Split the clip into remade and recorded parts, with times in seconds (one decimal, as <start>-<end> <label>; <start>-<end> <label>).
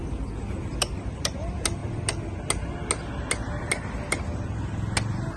0.0-5.4 recorded